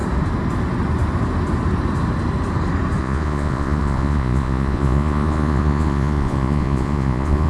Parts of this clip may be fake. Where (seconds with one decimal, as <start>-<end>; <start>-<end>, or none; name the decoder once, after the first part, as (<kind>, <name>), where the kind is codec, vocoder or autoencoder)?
3.0-7.5 (vocoder, Vocos)